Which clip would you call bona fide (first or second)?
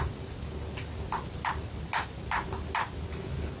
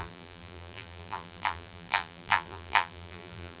first